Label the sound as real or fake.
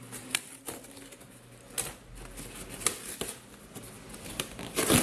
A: real